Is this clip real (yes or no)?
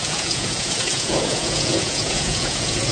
no